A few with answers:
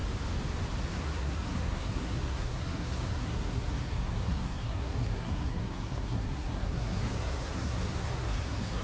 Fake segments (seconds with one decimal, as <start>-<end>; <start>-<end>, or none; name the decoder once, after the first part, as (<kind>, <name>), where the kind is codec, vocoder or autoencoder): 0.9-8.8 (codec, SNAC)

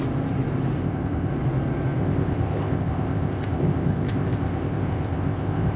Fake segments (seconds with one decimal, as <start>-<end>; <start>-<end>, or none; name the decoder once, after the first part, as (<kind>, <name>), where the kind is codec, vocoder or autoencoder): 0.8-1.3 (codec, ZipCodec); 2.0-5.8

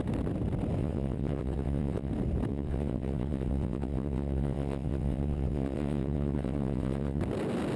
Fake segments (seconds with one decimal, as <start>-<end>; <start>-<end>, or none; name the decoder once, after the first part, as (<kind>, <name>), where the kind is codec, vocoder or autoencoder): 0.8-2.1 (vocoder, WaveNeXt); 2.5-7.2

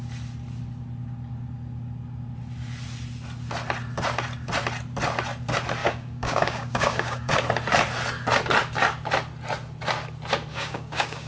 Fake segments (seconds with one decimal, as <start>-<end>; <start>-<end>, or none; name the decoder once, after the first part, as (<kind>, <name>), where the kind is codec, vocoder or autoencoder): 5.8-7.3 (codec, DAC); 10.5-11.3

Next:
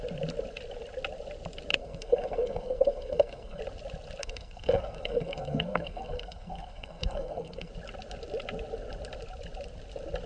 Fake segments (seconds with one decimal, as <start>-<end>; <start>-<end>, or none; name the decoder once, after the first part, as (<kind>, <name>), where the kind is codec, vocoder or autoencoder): 1.7-3.6 (codec, SNAC); 4.2-7.7

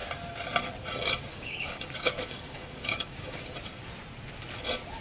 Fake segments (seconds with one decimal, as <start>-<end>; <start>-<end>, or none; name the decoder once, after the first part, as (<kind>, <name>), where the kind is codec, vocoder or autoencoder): 1.3-3.4 (codec, DAC)

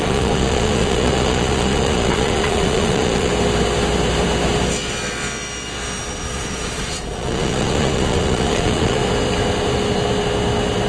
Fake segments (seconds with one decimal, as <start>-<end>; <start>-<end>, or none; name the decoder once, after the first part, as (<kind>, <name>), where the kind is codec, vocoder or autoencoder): 0.0-3.3 (vocoder, Vocos); 6.0-9.0

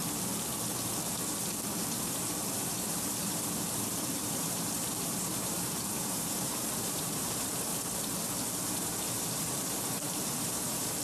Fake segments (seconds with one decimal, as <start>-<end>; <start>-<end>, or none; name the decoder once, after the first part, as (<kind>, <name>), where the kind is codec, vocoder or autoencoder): 2.0-7.7 (vocoder, BigVGAN v2); 8.7-11.0